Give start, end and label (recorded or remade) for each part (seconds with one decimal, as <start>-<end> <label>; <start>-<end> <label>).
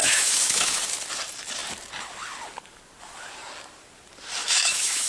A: 0.0-0.8 remade; 0.8-4.4 recorded; 4.4-5.1 remade